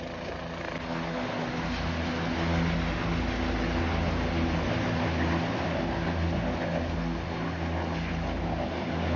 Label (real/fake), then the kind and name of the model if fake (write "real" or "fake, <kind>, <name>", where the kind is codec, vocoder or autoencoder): real